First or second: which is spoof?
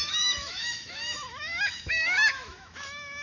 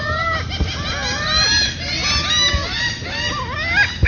first